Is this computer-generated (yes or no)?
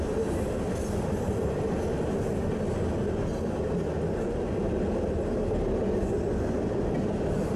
no